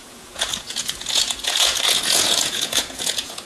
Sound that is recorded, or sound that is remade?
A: remade